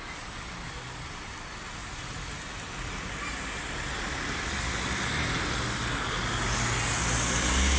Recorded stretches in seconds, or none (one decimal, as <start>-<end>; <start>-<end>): 0.0-7.8